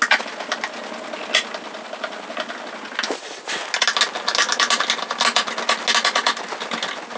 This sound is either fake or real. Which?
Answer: real